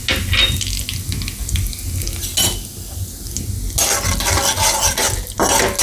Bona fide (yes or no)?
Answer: yes